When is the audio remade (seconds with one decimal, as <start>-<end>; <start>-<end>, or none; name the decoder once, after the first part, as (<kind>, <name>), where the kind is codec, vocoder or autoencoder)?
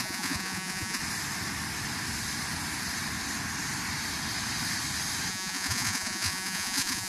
0.0-1.0 (vocoder, Vocos); 5.3-7.1